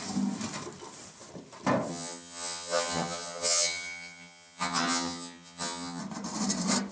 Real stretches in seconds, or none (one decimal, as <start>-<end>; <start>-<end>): 0.0-1.9; 6.0-6.9